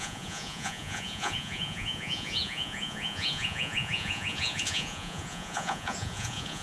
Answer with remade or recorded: remade